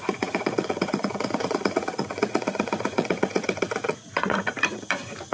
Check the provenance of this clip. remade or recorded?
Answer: remade